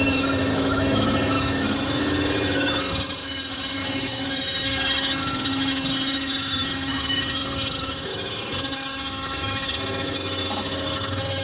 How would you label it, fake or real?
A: fake